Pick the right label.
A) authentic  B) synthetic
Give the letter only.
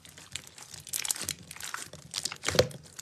A